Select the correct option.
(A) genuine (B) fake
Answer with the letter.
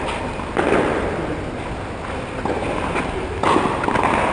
A